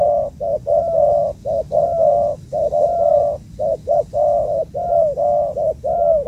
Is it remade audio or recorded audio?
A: recorded